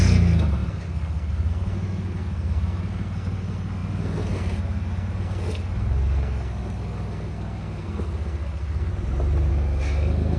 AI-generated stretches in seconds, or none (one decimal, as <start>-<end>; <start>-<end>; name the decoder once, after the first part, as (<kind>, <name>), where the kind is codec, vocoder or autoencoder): 0.0-8.9 (codec, SNAC); 9.5-10.4